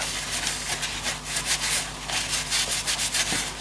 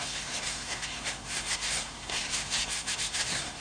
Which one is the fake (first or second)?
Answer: second